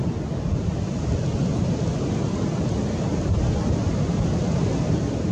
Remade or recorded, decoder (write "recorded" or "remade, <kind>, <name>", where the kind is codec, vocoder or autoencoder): recorded